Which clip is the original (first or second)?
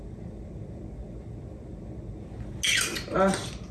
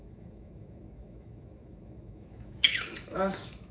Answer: first